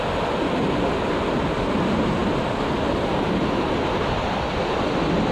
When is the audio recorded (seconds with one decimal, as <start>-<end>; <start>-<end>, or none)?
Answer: 0.0-5.3